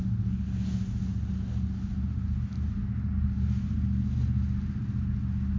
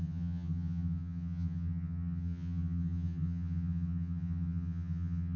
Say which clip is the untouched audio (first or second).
first